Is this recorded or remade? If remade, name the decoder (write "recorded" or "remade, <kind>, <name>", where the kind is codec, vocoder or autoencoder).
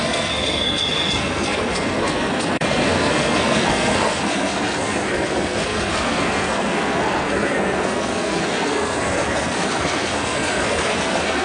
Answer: remade, codec, SNAC